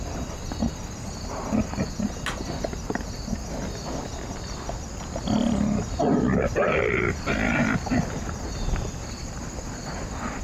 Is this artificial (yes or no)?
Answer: no